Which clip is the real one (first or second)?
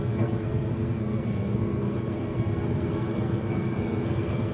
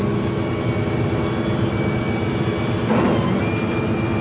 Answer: second